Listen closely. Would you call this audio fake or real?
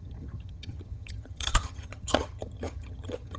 fake